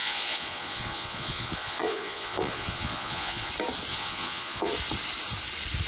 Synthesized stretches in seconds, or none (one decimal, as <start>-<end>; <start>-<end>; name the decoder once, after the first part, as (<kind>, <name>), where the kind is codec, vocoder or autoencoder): 0.0-3.5 (vocoder, Vocos); 3.9-4.7